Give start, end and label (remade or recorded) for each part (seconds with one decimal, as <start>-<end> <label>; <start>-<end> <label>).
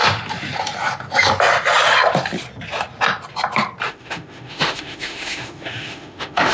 0.0-3.9 recorded; 3.9-6.5 remade